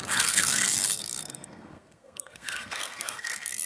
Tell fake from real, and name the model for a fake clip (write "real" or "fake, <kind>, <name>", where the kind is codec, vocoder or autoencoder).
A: fake, codec, SNAC